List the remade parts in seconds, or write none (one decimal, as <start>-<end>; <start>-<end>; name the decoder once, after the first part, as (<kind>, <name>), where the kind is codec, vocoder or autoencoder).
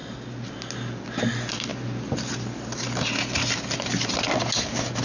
none